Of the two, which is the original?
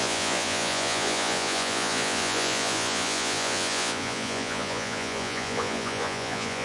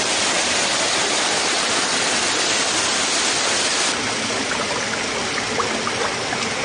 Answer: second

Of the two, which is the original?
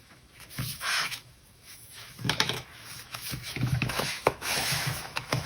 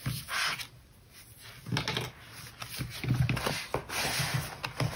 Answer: second